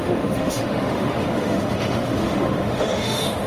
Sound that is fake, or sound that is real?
fake